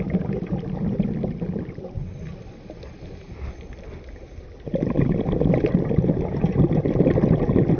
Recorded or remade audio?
recorded